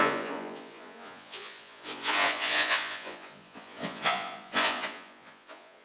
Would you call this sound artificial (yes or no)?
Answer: yes